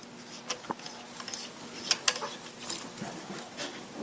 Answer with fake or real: real